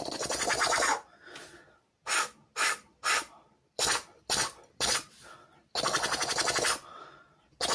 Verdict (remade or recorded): recorded